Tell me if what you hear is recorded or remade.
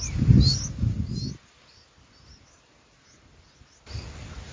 recorded